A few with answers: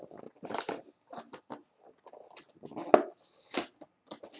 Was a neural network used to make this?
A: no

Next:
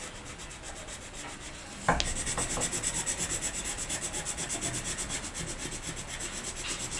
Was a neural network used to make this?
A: no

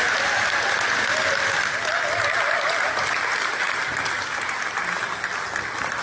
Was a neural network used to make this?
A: no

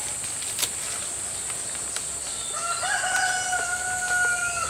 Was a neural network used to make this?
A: no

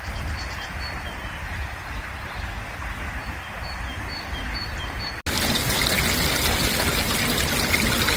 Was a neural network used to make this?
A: no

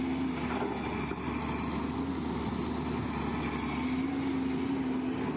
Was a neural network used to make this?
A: no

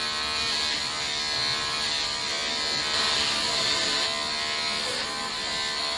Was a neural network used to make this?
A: no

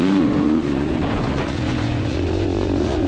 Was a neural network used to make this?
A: yes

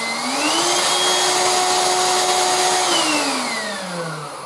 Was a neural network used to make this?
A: no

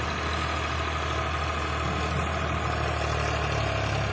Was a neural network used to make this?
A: no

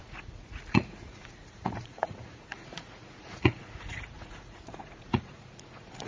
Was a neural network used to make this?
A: yes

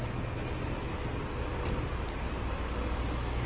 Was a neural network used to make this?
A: no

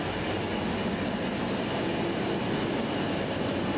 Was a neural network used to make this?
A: no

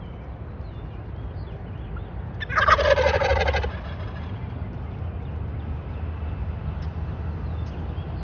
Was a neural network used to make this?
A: no